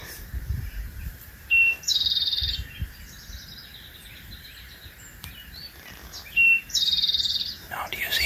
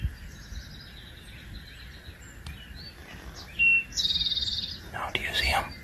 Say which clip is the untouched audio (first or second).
second